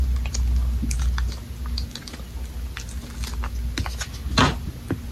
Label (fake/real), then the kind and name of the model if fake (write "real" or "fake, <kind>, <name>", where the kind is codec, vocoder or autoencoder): real